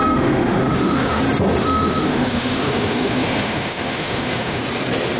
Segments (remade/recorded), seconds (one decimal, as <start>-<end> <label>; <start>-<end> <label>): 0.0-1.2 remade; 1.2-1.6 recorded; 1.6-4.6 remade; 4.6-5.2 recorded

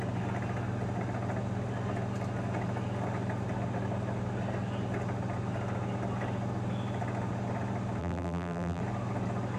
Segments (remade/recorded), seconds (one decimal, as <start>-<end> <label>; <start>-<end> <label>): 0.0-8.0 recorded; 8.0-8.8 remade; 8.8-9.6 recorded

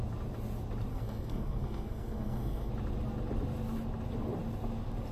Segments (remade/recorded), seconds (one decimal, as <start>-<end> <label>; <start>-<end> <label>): 0.0-0.9 recorded; 0.9-2.7 remade; 2.7-5.1 recorded

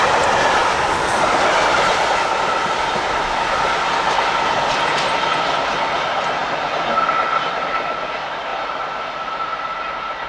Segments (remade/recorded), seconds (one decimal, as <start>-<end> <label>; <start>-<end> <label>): 0.0-0.6 recorded; 0.6-1.5 remade; 1.5-10.3 recorded

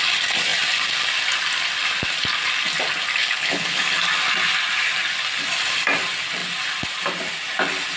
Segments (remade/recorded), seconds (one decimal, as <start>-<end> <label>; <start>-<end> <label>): 0.0-3.2 recorded; 3.2-3.8 remade; 3.8-8.0 recorded

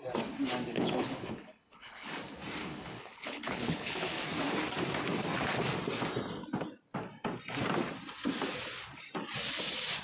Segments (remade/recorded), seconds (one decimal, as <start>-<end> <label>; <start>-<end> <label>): 0.0-0.7 recorded; 0.7-2.1 remade; 2.1-2.6 recorded; 2.6-4.2 remade; 4.2-10.0 recorded

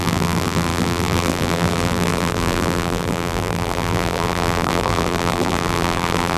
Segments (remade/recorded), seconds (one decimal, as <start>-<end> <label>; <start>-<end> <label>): 0.0-6.4 remade